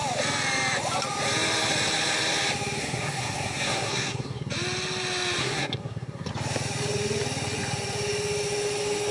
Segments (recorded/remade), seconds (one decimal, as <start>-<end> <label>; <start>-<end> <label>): 0.0-2.8 recorded; 2.8-4.5 remade; 4.5-5.4 recorded; 5.4-6.3 remade; 6.3-9.1 recorded